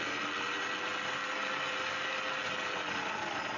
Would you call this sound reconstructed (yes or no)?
no